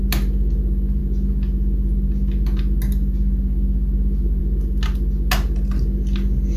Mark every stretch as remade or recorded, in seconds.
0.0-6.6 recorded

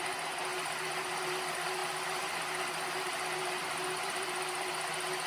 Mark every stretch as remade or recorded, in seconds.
0.0-5.3 recorded

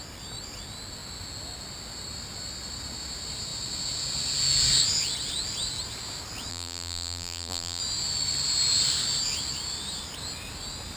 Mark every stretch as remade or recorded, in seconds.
0.0-6.5 recorded; 6.5-7.8 remade; 7.8-11.0 recorded

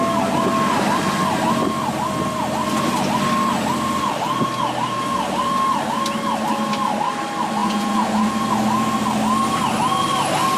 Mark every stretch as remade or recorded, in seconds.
0.0-7.6 recorded; 7.6-8.3 remade; 8.3-10.6 recorded

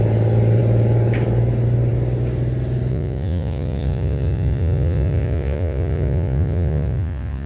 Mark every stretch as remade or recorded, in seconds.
0.0-2.9 recorded; 2.9-7.5 remade

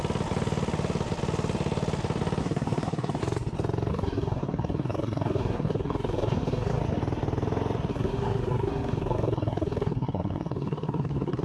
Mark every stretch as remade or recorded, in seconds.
0.0-2.4 recorded; 2.4-3.2 remade; 3.2-3.9 recorded; 3.9-6.8 remade; 6.8-7.9 recorded; 7.9-11.4 remade